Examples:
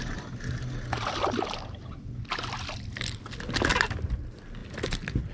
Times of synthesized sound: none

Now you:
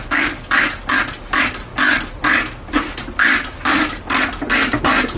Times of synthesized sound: none

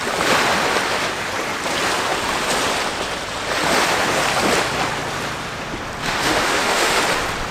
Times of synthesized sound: 6.0-7.0 (autoencoder, DAC-VAE)